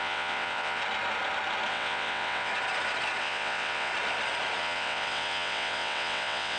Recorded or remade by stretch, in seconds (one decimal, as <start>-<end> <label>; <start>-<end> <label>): 0.0-0.8 remade; 0.8-1.7 recorded; 1.7-2.5 remade; 2.5-3.2 recorded; 3.2-3.9 remade; 3.9-4.6 recorded; 4.6-6.6 remade